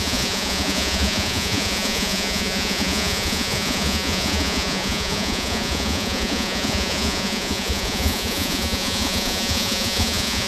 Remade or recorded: remade